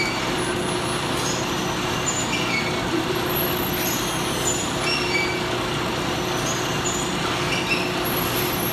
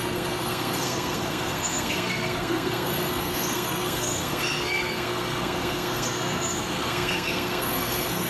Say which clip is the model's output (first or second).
second